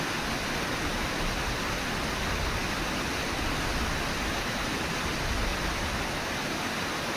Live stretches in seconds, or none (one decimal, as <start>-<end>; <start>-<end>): 0.0-7.2